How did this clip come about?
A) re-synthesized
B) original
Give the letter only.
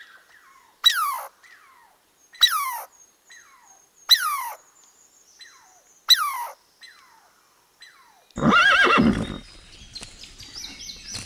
B